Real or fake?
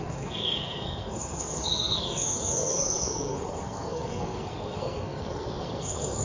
fake